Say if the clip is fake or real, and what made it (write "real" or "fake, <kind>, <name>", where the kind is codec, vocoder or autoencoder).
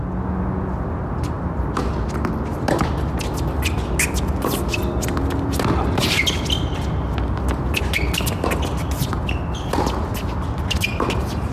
real